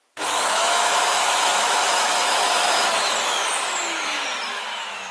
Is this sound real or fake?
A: fake